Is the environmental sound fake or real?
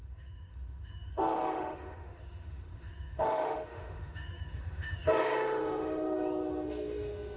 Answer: fake